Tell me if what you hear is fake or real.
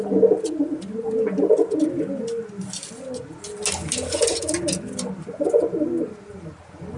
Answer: real